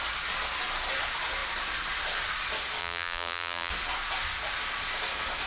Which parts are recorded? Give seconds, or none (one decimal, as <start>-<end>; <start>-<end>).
0.0-2.8; 3.7-5.5